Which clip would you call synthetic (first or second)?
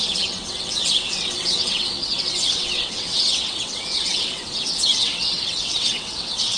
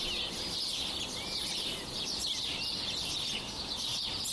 first